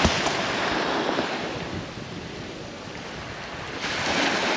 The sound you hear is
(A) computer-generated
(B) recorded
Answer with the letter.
B